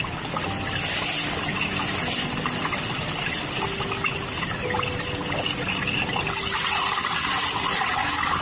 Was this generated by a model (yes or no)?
no